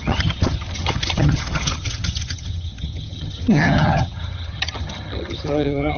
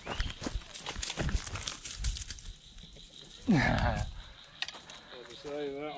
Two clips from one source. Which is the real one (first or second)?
second